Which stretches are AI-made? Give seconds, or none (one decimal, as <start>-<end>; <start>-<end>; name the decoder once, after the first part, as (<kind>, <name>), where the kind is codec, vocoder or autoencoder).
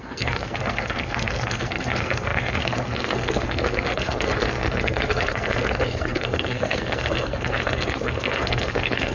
0.0-9.1 (codec, SNAC)